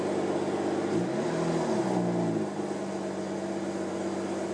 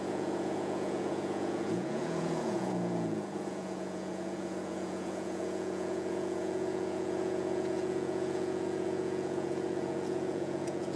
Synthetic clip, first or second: second